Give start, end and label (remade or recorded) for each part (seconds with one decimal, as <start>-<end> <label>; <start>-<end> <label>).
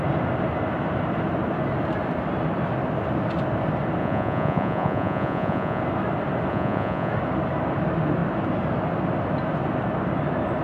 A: 0.0-4.0 recorded; 4.0-5.8 remade; 5.8-6.5 recorded; 6.5-7.1 remade; 7.1-10.6 recorded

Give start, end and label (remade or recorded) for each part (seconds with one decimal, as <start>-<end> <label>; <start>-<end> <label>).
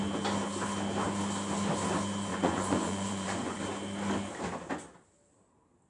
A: 0.0-2.3 recorded; 2.3-3.6 remade; 3.6-5.9 recorded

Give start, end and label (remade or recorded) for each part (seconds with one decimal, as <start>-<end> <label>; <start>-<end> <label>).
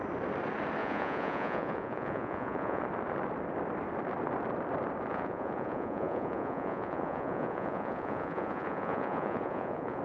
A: 0.0-0.8 recorded; 0.8-2.8 remade; 2.8-5.1 recorded; 5.1-10.0 remade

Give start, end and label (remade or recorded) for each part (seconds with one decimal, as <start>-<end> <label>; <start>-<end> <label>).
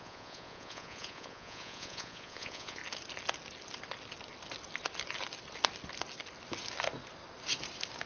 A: 0.0-2.8 remade; 2.8-8.1 recorded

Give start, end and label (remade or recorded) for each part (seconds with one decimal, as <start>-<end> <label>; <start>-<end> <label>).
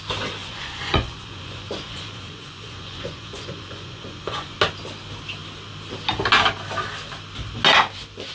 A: 0.0-0.4 recorded; 0.4-4.6 remade; 4.6-8.3 recorded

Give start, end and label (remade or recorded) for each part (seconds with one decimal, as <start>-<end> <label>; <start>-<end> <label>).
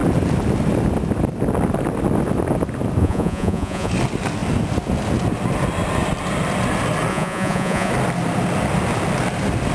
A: 0.0-3.0 recorded; 3.0-3.9 remade; 3.9-7.1 recorded; 7.1-7.9 remade; 7.9-9.7 recorded